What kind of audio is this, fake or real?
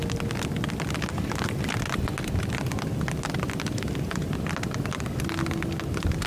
real